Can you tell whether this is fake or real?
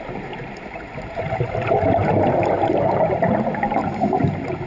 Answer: fake